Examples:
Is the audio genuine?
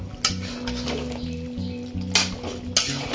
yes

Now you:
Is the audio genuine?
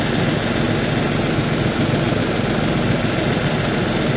yes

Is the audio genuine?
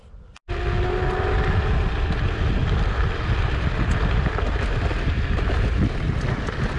yes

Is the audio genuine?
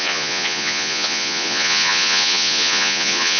no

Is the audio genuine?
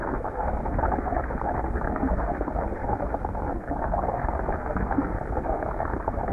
no